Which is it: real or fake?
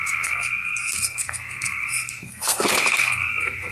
fake